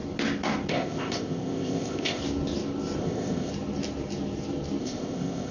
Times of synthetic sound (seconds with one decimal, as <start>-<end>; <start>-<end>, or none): 0.7-2.2; 3.0-3.5; 4.8-5.5